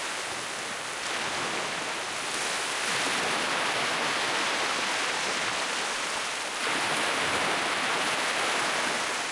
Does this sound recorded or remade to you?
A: recorded